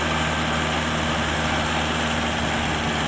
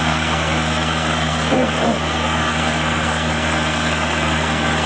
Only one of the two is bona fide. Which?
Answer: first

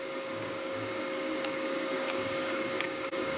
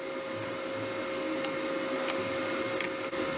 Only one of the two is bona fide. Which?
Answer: second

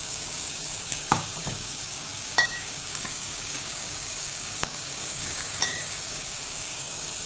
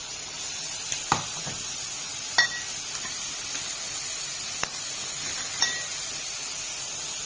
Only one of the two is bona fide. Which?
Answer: second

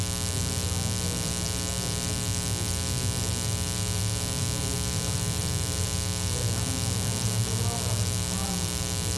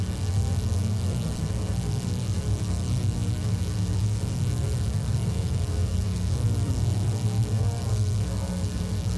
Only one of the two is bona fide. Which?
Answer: first